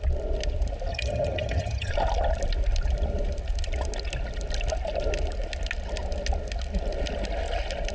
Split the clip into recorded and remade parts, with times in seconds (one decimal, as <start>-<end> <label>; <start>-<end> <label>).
0.0-0.9 recorded; 0.9-1.9 remade; 1.9-7.9 recorded